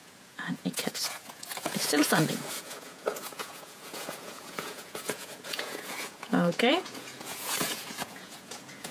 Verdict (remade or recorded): remade